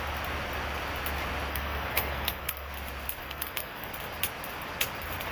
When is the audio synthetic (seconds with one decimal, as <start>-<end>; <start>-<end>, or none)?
1.5-2.7; 3.2-3.9

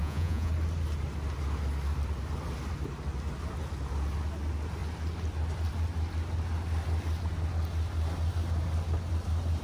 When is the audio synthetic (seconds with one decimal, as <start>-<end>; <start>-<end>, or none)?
0.0-0.5